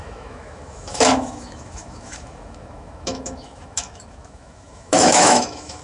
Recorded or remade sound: remade